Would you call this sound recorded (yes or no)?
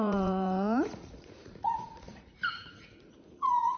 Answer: no